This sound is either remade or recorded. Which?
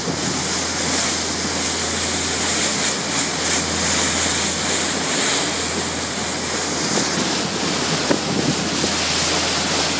recorded